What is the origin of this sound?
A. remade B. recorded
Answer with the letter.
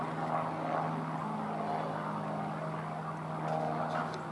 B